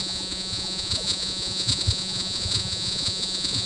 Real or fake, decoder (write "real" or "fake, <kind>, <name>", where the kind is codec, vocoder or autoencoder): fake, vocoder, Vocos